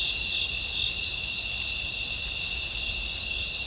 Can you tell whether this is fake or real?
real